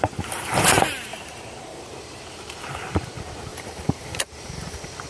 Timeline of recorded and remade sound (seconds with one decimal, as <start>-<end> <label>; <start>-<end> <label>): 0.0-1.1 recorded; 1.1-2.2 remade; 2.2-3.5 recorded; 3.5-5.1 remade